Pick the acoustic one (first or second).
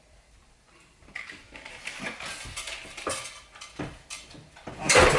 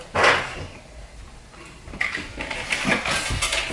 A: second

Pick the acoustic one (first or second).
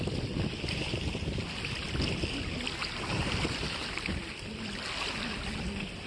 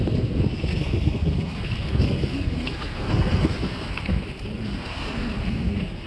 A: first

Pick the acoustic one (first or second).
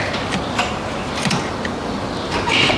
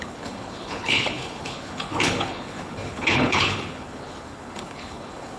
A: first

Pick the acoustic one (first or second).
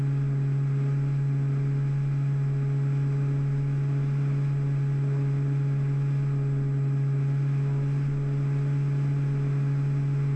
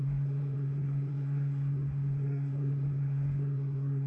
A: first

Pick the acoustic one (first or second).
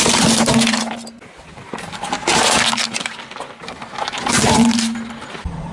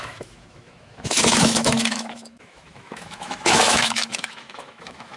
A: first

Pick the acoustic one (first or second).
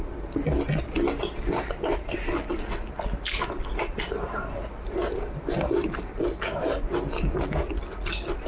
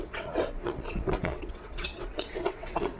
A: first